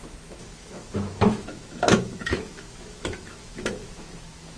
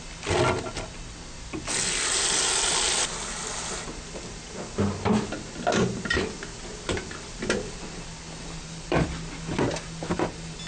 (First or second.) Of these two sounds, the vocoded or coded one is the first